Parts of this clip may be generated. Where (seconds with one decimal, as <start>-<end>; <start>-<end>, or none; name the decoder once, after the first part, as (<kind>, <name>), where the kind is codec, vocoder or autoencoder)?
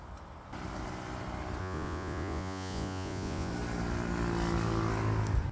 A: 1.6-3.5 (vocoder, Vocos)